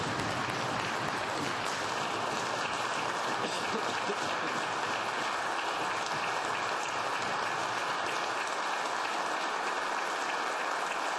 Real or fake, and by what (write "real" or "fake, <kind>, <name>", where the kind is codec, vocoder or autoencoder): real